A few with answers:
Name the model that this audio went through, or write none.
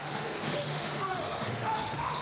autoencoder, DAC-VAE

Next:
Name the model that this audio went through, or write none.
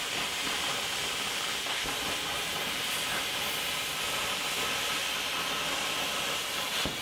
vocoder, BigVGAN v2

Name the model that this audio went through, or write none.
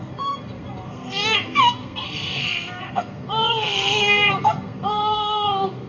codec, SNAC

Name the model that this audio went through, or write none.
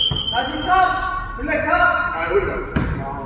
none